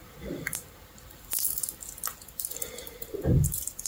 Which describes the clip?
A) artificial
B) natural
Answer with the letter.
B